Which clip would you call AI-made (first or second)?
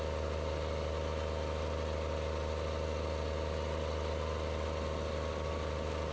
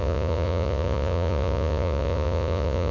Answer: second